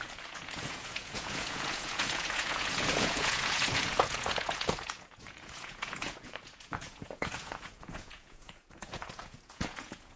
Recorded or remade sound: remade